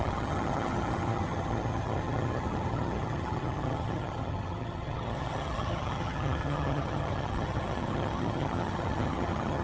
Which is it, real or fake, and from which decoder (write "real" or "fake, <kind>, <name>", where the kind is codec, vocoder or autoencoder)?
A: fake, vocoder, HiFi-GAN